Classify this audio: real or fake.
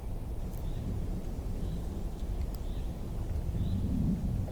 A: fake